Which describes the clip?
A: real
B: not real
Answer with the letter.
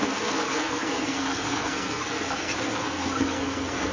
B